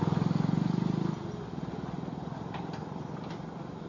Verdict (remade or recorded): recorded